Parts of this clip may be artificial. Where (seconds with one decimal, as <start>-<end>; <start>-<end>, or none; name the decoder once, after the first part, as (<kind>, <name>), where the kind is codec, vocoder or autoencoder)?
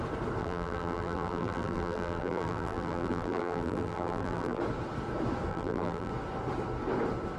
0.4-4.6 (vocoder, BigVGAN v2); 5.5-6.1